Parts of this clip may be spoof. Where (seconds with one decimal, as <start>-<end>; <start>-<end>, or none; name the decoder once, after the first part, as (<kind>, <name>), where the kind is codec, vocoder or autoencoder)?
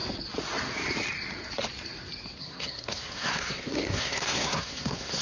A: 2.4-5.2 (codec, SNAC)